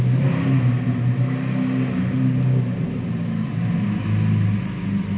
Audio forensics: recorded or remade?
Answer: recorded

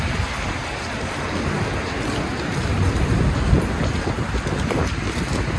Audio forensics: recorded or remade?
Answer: recorded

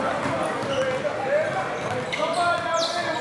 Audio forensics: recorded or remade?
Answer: recorded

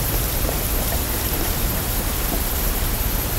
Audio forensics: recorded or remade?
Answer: remade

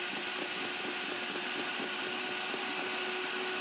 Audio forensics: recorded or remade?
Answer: recorded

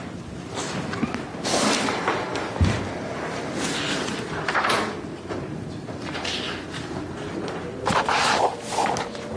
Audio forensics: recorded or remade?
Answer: recorded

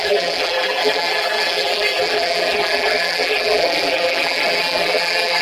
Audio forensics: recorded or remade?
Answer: remade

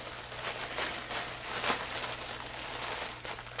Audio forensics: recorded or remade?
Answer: recorded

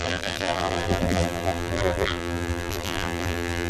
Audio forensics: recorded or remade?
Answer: remade